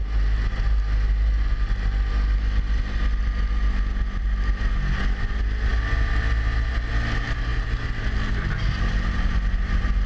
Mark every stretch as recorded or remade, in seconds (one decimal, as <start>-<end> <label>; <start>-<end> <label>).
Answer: 0.0-10.1 recorded